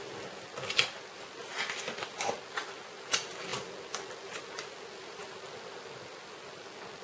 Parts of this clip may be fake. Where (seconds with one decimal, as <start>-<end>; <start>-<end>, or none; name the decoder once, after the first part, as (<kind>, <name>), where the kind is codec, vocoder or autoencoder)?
none